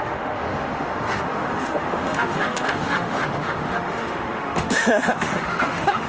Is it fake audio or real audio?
fake